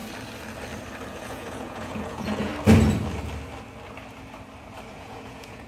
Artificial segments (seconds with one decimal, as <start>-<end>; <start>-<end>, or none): 1.1-2.5; 4.9-5.7